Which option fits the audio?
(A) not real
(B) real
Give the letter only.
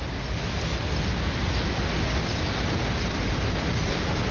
B